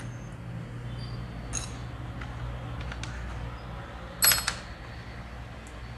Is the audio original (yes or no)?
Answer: yes